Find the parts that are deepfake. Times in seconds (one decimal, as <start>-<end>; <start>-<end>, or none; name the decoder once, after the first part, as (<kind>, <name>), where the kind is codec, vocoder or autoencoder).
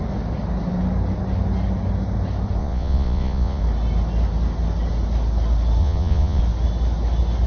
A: 2.6-3.6 (vocoder, Vocos); 5.8-6.4